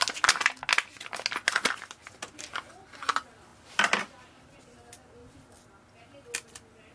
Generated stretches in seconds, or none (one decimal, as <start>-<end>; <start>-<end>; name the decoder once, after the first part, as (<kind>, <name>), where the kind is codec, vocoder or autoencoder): 2.0-3.1 (vocoder, BigVGAN v2); 3.5-4.6